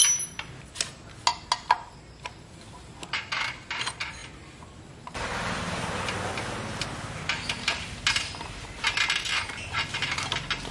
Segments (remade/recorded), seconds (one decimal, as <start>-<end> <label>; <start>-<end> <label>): 0.0-10.7 recorded

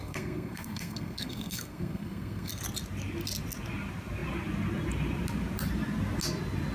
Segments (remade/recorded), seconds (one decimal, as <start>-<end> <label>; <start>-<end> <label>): 0.0-2.5 remade; 2.5-6.7 recorded